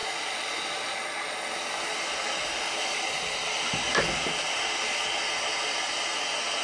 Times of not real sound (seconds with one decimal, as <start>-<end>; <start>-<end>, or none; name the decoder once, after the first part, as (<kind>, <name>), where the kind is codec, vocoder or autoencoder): none